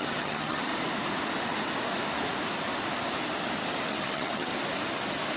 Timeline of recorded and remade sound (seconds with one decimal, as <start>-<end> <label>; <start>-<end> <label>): 0.0-0.7 remade; 0.7-3.9 recorded; 3.9-4.5 remade; 4.5-5.4 recorded